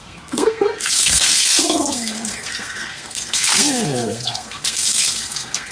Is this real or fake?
fake